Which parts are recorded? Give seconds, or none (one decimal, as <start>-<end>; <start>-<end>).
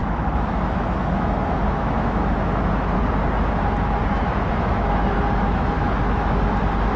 3.0-4.1; 6.6-7.0